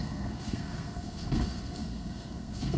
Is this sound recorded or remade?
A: remade